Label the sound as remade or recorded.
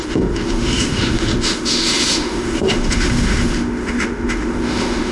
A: remade